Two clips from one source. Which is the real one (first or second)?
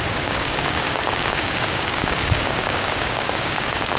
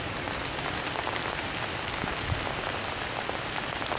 second